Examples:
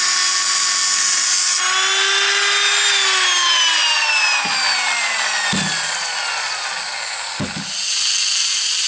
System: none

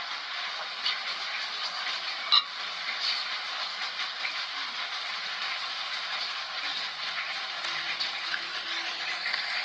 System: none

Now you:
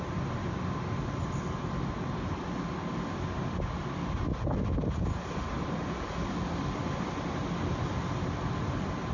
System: none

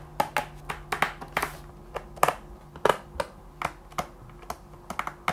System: none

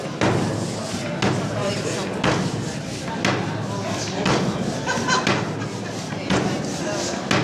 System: none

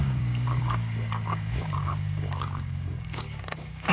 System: codec, DAC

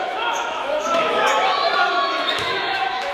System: autoencoder, DAC-VAE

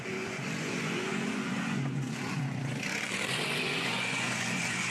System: vocoder, Vocos